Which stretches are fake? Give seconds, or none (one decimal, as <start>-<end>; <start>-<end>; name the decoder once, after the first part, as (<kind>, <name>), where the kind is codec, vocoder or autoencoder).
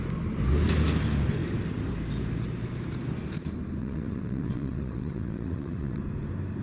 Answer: 3.8-6.0 (vocoder, WaveNeXt)